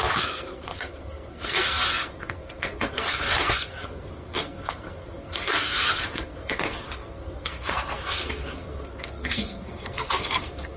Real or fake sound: fake